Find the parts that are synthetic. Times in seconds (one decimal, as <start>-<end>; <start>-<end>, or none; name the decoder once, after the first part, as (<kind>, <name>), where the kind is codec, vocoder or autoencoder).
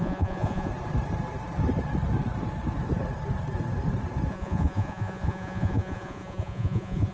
0.0-0.7 (vocoder, Vocos); 4.3-7.1